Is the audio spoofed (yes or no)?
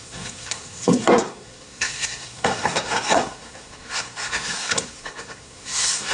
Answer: yes